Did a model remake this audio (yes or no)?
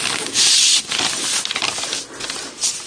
no